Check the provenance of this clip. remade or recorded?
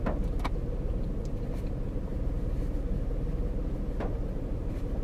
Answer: recorded